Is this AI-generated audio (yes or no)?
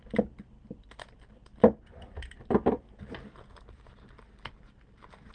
no